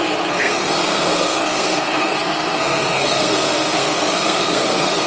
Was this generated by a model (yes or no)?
yes